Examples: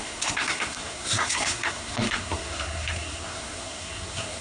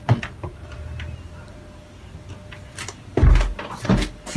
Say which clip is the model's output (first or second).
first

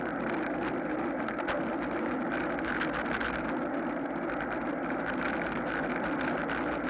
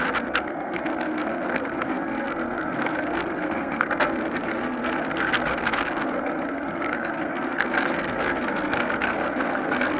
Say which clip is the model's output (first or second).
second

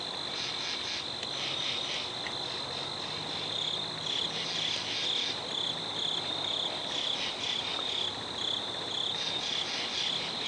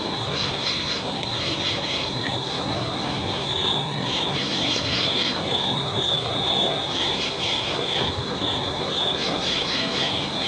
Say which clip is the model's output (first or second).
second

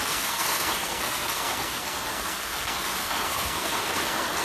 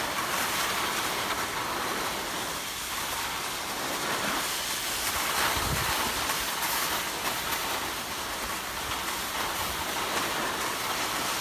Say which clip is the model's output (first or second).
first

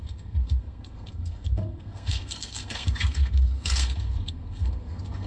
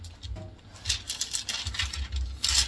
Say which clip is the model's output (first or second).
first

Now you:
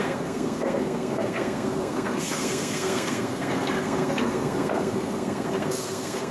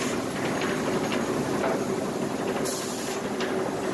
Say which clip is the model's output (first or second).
first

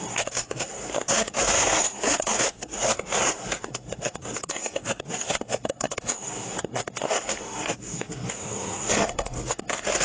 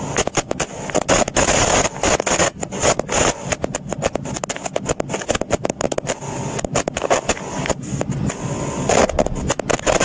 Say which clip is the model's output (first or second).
first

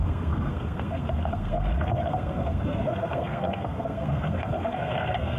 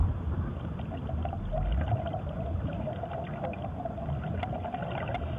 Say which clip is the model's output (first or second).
first